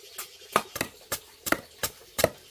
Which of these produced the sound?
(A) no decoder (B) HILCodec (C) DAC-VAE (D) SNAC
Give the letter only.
A